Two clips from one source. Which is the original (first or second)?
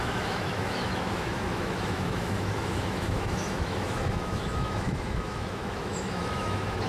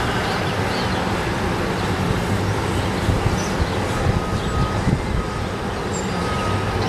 second